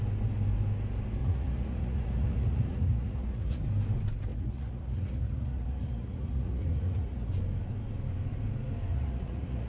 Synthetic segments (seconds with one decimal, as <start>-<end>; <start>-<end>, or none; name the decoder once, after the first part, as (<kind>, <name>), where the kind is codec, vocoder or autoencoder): 1.2-3.6 (vocoder, Vocos); 4.3-7.3; 8.9-9.7